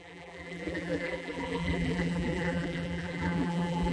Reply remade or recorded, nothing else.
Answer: remade